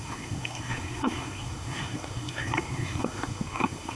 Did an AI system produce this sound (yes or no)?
yes